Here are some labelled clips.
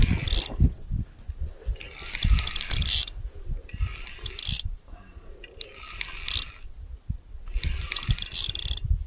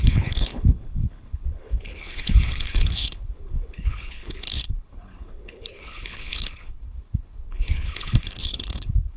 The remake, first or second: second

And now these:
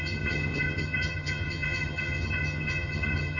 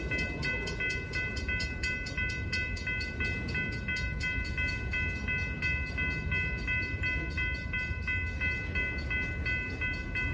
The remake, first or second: first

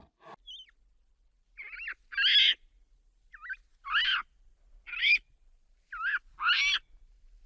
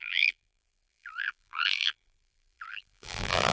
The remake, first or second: second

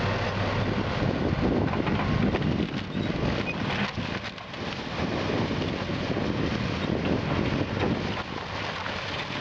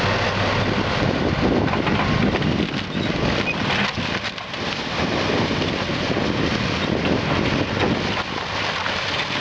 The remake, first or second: second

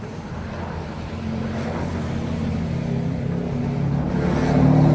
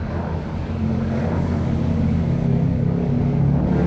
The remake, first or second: second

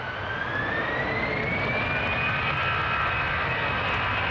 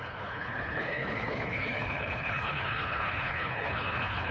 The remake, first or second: second